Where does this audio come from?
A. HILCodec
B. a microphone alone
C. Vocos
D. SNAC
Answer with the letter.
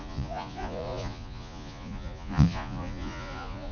C